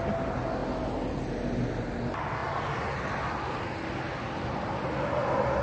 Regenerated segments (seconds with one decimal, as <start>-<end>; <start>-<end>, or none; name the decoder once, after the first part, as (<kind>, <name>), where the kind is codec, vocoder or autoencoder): none